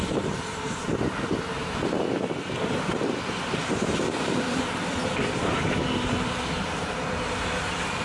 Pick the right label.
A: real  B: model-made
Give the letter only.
B